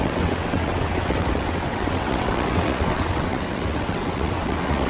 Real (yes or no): no